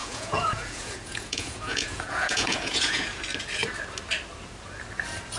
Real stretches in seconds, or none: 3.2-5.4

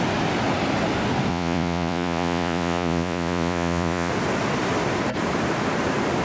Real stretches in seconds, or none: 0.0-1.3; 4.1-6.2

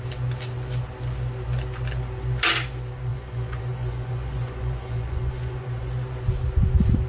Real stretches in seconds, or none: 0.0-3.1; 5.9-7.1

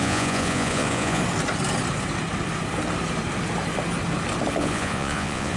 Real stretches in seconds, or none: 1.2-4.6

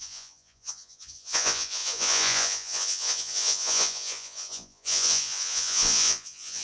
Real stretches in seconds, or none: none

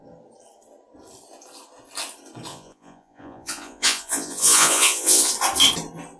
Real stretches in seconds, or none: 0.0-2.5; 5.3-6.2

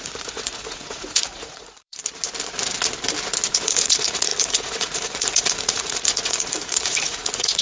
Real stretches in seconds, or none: 2.0-3.5

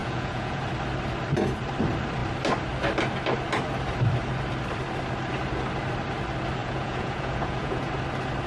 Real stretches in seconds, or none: 0.6-6.6; 7.9-8.5